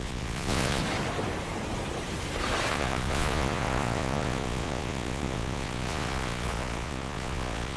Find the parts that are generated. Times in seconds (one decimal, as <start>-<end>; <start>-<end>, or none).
0.0-0.8; 2.7-7.8